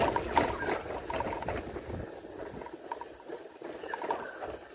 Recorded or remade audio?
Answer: recorded